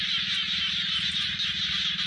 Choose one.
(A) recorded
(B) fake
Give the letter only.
A